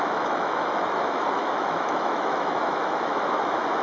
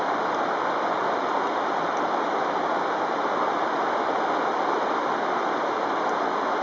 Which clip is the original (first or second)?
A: second